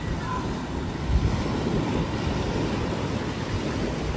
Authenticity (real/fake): real